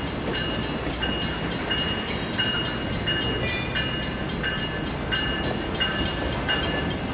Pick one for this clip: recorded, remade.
recorded